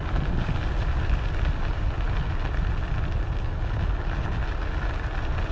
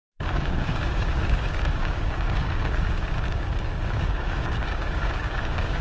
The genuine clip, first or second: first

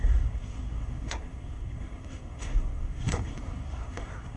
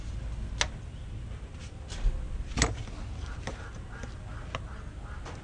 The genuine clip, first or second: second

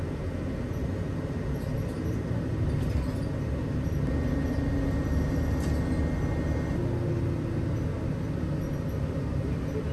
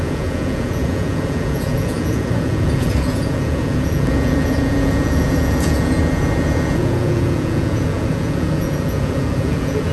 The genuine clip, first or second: first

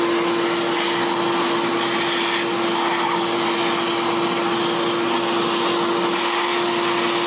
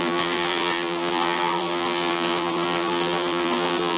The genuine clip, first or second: first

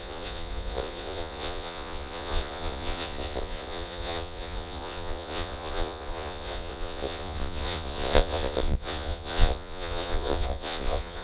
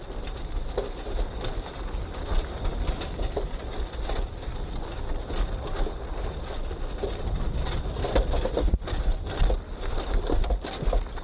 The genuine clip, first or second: second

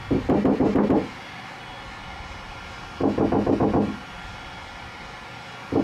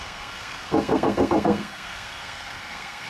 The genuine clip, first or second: first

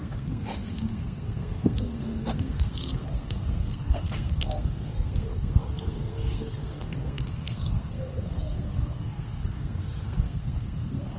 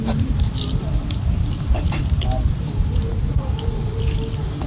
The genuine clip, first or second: second